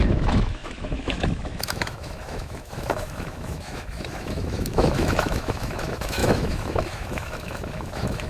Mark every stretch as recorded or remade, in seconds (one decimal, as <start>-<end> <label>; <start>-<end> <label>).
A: 0.0-8.3 remade